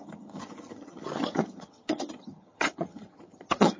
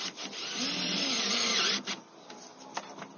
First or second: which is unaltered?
second